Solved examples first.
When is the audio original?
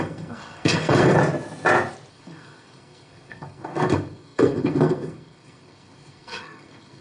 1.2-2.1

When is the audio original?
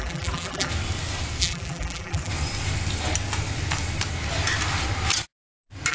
0.7-1.4; 2.3-5.9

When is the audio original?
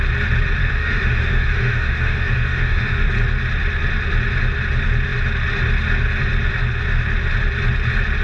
0.0-0.6; 3.1-8.2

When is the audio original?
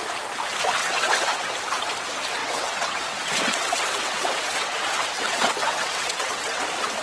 0.0-0.8; 1.4-2.4; 6.6-7.0